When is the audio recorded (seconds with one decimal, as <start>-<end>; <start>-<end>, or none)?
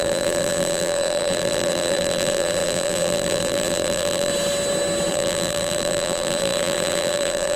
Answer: 4.3-5.1